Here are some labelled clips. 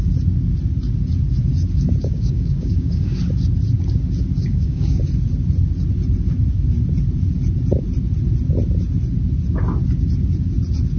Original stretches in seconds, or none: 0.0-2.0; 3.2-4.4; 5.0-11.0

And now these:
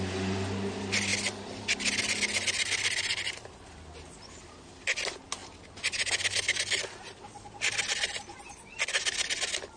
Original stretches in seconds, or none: 0.0-9.8

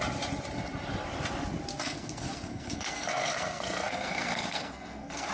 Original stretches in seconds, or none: 0.0-1.7

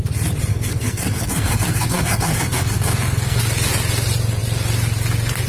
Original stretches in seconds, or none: 0.0-0.5; 3.4-5.5

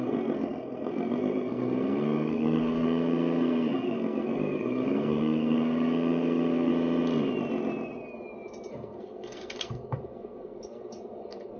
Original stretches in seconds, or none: 6.7-8.7

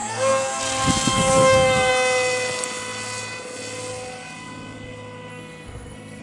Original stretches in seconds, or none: 0.6-1.1; 1.9-5.3

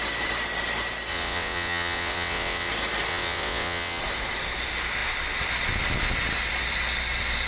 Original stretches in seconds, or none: 0.0-1.1; 2.7-3.1; 4.0-7.5